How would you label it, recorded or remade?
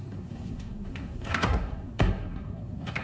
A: remade